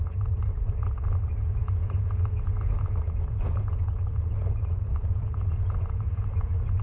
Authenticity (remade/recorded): remade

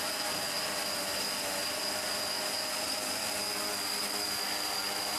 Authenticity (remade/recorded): recorded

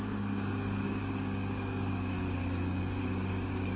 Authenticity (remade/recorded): remade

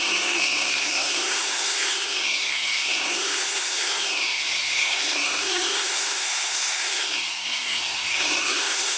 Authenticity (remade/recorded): remade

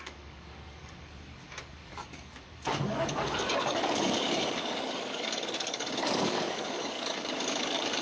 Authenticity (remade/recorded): remade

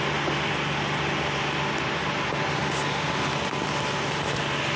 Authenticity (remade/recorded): recorded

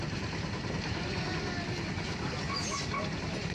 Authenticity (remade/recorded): remade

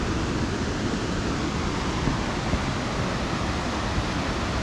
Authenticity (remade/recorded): recorded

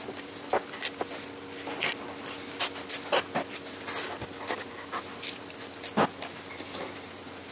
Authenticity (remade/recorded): recorded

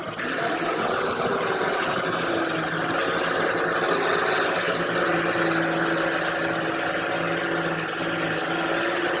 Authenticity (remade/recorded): recorded